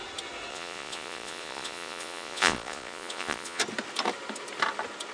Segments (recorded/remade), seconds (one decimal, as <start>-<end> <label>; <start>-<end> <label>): 0.0-0.5 recorded; 0.5-3.6 remade; 3.6-5.1 recorded